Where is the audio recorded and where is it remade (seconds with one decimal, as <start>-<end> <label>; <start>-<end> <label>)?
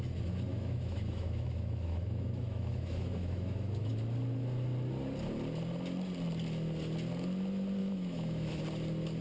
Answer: 0.0-0.5 recorded; 0.5-3.9 remade; 3.9-7.8 recorded; 7.8-8.6 remade; 8.6-9.2 recorded